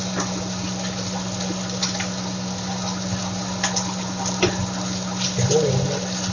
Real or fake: real